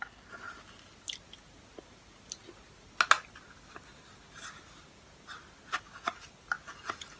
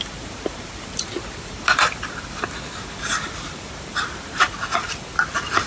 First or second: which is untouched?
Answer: first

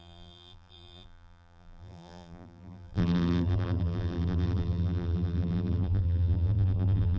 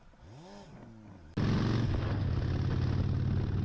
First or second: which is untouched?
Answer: second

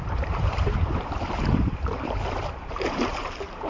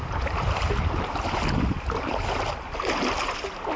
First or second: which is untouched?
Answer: second